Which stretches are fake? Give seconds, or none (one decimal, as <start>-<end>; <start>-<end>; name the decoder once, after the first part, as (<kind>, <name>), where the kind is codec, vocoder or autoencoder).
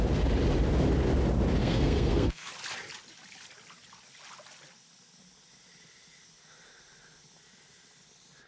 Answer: 1.6-2.5 (codec, SNAC)